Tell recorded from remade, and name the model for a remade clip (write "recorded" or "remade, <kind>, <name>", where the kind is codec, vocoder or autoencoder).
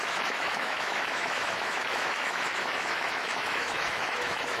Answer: remade, autoencoder, DAC-VAE